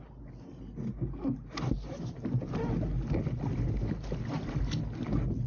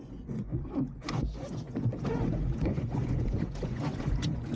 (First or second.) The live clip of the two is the first